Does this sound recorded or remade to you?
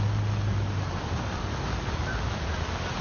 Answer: recorded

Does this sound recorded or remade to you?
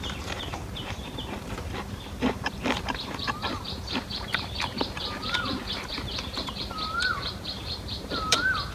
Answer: remade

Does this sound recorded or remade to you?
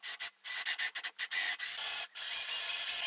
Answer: recorded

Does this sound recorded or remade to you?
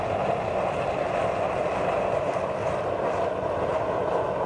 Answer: recorded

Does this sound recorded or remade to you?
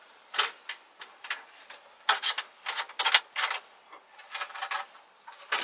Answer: recorded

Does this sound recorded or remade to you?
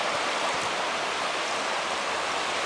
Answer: recorded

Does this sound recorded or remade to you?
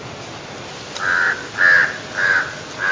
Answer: recorded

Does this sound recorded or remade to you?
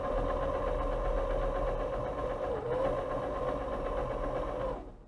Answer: recorded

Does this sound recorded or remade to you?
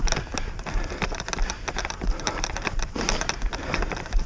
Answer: recorded